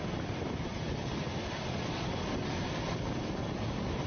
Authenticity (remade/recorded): recorded